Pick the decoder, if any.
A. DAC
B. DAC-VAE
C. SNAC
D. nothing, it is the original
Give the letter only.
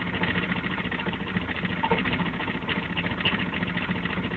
D